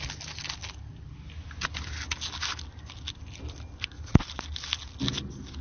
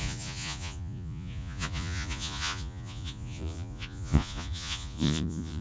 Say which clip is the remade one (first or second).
second